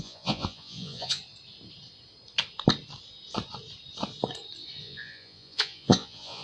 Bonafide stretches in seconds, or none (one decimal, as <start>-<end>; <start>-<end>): 1.2-4.8